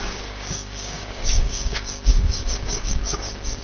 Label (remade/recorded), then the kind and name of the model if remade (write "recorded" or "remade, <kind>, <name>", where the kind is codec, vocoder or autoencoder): remade, codec, DAC